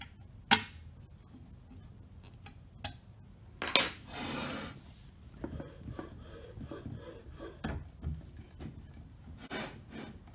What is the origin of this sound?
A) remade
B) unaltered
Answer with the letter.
B